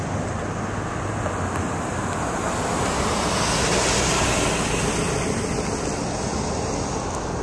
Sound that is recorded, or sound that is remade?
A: recorded